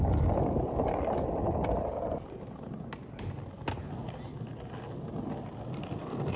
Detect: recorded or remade recorded